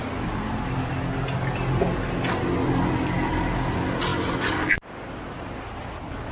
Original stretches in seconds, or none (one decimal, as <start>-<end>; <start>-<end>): 0.0-6.3